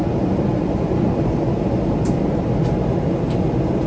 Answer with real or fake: real